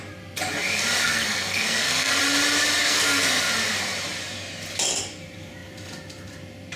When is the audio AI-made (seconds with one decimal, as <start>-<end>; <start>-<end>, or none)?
1.0-2.2; 2.8-3.5